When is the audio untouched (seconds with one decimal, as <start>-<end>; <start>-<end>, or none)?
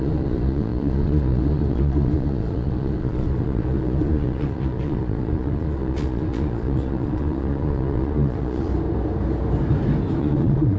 8.7-10.2